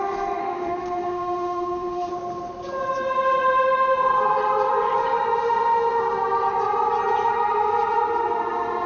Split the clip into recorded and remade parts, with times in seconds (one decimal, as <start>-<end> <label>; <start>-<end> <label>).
0.0-0.4 recorded; 0.4-2.1 remade; 2.1-8.9 recorded